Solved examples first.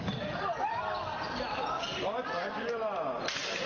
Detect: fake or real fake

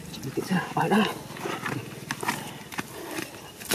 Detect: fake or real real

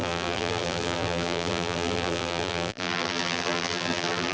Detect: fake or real fake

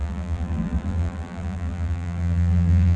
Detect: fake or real fake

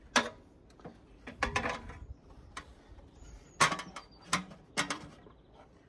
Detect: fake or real real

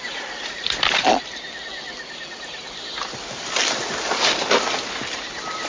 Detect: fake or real real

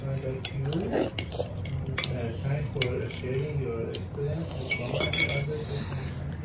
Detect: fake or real real